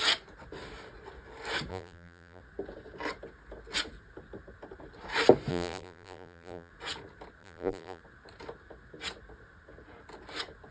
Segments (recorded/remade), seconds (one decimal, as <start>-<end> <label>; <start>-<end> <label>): 0.0-1.7 recorded; 1.7-2.4 remade; 2.4-5.5 recorded; 5.5-6.7 remade; 6.7-7.4 recorded; 7.4-8.0 remade; 8.0-10.7 recorded